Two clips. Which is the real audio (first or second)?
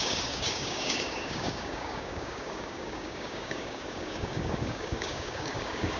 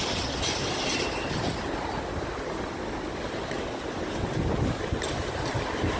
second